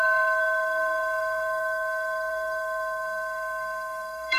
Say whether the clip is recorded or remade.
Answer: remade